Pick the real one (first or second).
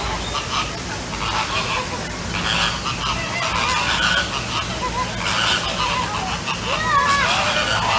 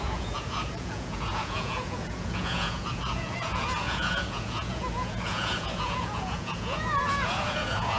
first